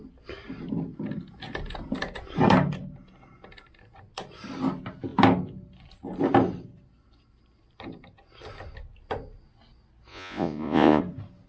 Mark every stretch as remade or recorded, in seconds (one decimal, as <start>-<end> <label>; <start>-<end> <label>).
0.0-10.1 recorded; 10.1-11.0 remade; 11.0-11.5 recorded